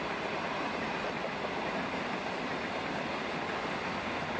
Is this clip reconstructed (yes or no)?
no